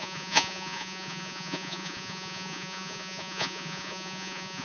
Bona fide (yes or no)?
no